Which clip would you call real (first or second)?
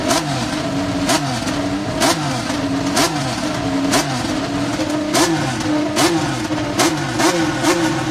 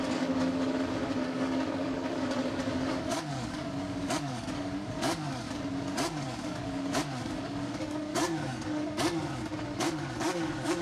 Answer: first